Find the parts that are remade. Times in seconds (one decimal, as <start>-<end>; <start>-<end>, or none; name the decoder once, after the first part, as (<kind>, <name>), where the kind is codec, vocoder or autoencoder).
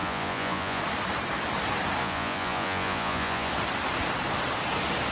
0.0-0.8 (vocoder, Vocos); 2.0-3.5